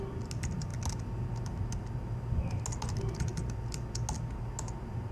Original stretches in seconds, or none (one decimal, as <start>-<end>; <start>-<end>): 0.0-5.1